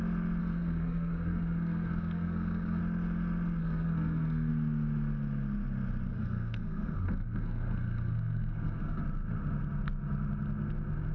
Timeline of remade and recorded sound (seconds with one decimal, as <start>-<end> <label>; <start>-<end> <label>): 0.0-0.4 recorded; 0.4-2.8 remade; 2.8-3.6 recorded; 3.6-4.5 remade; 4.5-6.1 recorded; 6.1-9.0 remade; 9.0-11.1 recorded